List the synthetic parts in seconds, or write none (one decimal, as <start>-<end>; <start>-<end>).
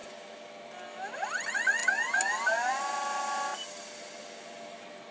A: none